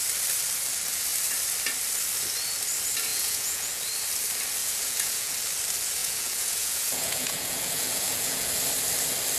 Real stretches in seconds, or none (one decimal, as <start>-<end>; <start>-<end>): 0.0-3.1; 3.8-4.6; 5.3-6.0; 8.5-9.4